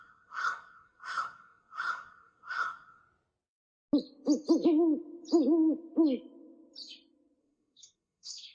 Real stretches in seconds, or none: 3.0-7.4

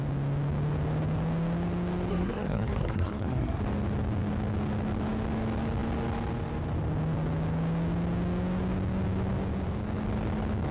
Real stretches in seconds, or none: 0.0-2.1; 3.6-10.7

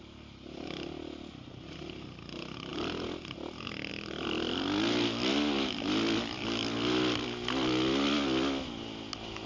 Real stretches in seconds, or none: 0.0-9.5

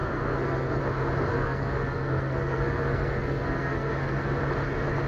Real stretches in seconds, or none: 0.8-1.3; 4.4-5.1

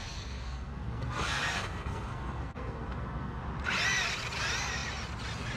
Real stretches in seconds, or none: 3.4-5.6